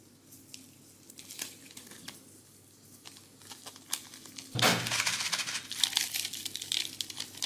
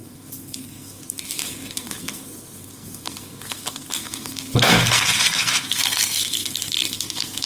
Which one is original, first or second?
first